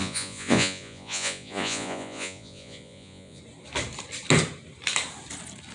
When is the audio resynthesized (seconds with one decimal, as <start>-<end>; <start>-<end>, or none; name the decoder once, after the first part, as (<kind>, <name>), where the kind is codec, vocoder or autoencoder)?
0.0-3.4 (vocoder, Vocos)